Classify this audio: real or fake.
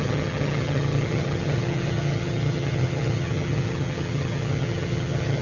fake